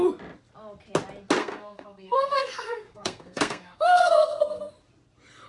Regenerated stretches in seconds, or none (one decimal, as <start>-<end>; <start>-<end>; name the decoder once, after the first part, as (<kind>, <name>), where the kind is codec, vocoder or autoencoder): 1.4-4.7 (codec, SNAC)